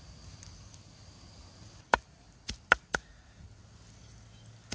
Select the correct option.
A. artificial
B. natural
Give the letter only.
B